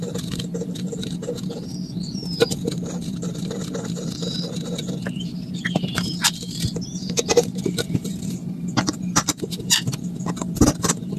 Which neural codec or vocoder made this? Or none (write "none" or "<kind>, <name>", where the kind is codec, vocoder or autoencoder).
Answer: vocoder, BigVGAN v2